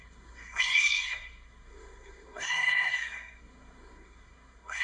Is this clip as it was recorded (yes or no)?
no